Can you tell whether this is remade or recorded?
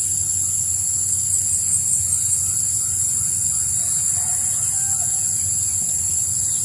remade